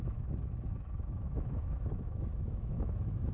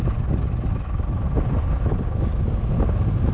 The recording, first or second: second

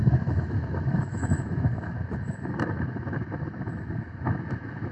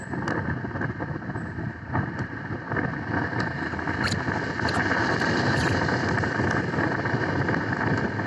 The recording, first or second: second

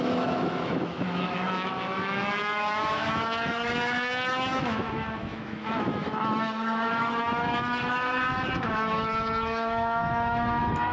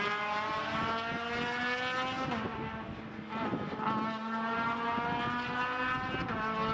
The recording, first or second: second